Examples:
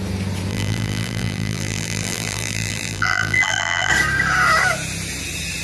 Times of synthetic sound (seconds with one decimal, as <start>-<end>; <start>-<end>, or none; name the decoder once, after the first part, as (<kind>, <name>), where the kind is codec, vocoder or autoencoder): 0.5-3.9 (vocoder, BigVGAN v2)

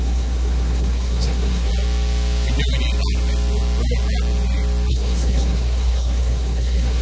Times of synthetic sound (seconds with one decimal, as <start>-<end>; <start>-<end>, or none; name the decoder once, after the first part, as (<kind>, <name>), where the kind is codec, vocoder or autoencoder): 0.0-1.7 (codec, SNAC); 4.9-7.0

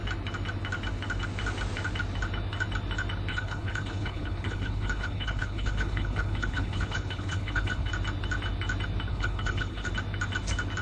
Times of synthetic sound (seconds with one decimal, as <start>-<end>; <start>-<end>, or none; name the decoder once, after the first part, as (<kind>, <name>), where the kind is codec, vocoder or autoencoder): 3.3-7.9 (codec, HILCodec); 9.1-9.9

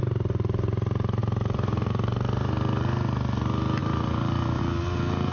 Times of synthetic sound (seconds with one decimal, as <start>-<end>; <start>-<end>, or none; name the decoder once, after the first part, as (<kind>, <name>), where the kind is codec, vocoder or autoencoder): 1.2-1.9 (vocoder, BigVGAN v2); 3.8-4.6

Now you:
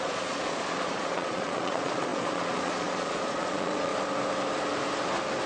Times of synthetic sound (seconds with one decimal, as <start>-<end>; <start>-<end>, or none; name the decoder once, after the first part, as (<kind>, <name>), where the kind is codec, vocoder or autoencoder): 0.0-3.9 (vocoder, Vocos)